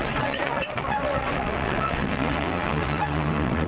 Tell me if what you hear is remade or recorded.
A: remade